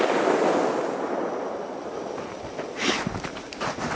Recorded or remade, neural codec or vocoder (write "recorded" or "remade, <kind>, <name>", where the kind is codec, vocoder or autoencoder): recorded